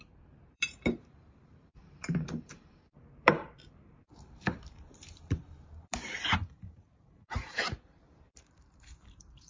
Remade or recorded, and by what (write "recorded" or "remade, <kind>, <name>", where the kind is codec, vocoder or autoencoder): remade, vocoder, BigVGAN v2